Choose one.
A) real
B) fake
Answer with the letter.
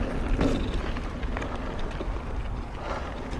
A